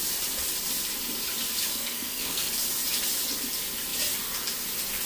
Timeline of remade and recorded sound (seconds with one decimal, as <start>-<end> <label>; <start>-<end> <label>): 0.0-1.7 recorded; 1.7-2.5 remade; 2.5-5.1 recorded